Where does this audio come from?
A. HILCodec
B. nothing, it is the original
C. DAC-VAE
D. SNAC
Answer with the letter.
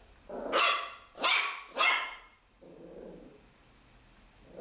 B